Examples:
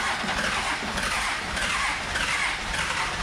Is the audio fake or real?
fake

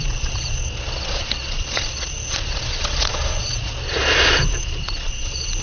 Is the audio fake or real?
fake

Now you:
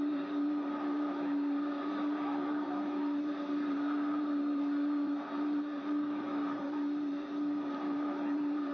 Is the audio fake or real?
fake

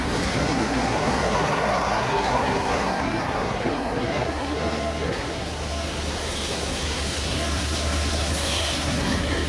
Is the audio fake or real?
fake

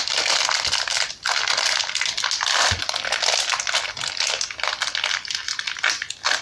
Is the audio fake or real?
real